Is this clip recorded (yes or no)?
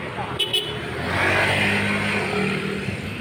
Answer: yes